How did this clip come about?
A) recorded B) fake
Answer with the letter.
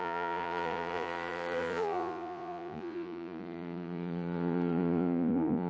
B